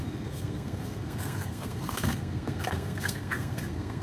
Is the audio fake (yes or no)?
yes